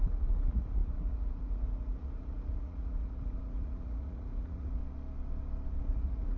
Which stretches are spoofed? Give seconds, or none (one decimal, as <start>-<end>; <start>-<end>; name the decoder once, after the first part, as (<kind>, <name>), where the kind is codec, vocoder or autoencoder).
0.0-4.8 (vocoder, Vocos); 5.8-6.4